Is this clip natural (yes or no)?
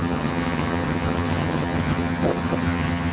no